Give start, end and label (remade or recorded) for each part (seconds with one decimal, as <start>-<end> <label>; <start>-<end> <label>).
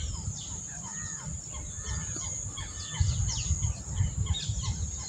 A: 0.0-0.9 remade; 0.9-4.0 recorded; 4.0-5.1 remade